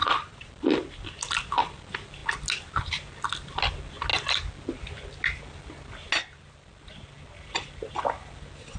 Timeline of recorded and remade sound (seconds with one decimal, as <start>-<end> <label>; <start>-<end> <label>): 0.0-0.5 remade; 0.5-8.8 recorded